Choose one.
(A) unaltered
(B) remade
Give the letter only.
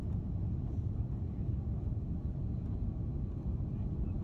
A